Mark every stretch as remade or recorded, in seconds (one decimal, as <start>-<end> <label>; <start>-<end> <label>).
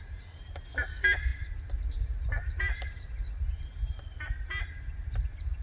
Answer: 0.0-5.6 recorded